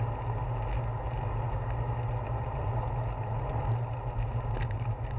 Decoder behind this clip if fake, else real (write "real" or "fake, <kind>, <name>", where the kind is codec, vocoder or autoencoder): real